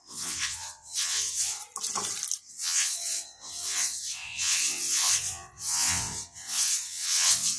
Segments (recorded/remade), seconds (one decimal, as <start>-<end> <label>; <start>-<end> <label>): 0.0-1.6 remade; 1.6-2.4 recorded; 2.4-7.6 remade